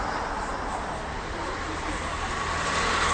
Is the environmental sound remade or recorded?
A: recorded